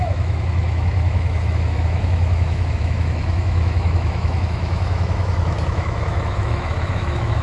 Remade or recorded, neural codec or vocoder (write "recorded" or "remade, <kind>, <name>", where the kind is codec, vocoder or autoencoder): remade, autoencoder, DAC-VAE